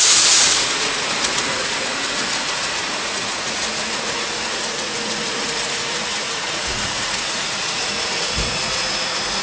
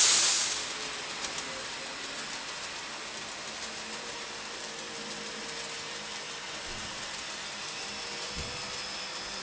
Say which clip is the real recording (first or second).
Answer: second